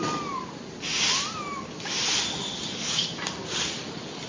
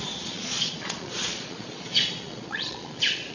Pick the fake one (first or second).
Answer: second